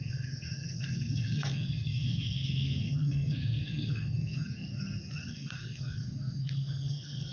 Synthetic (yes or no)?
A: yes